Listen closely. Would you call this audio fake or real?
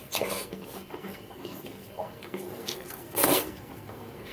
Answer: fake